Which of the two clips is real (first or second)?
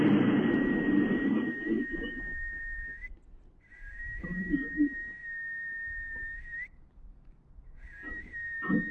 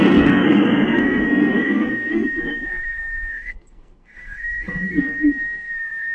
first